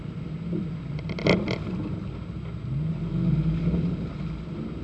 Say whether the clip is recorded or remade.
recorded